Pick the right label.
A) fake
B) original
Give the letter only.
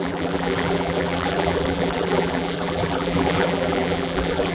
A